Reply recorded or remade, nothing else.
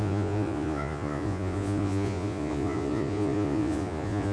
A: remade